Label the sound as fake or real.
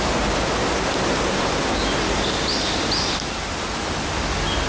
real